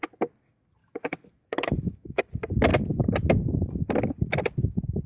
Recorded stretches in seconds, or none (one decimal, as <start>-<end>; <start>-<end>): 0.0-0.8; 2.2-5.1